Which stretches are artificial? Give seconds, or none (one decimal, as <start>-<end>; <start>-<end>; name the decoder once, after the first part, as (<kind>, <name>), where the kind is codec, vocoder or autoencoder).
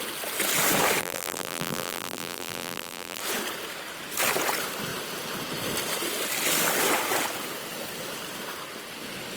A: 1.0-3.2 (vocoder, BigVGAN v2)